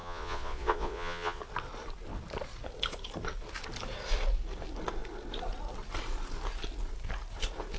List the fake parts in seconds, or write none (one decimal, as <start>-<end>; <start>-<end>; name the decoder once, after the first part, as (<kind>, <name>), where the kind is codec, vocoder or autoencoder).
0.0-1.4 (vocoder, Vocos)